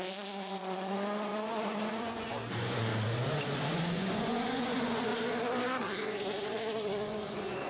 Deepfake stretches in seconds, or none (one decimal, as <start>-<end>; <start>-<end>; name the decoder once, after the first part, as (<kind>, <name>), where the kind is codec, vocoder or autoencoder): 0.0-2.9 (vocoder, Vocos); 3.7-5.1; 6.0-7.7